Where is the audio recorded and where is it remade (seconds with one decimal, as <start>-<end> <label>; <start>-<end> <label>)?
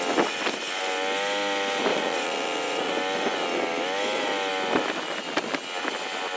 0.0-1.9 recorded; 1.9-2.9 remade; 2.9-6.4 recorded